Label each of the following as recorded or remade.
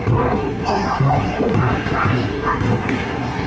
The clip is remade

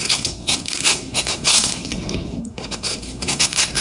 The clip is remade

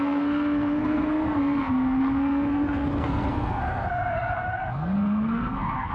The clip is remade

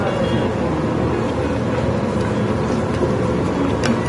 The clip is recorded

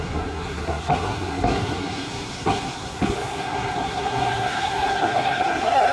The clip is remade